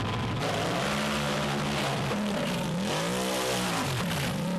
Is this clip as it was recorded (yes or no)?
yes